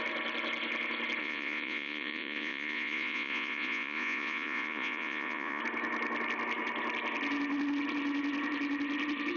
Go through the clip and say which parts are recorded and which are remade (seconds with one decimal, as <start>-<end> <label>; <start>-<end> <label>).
0.0-1.2 recorded; 1.2-5.6 remade; 5.6-9.4 recorded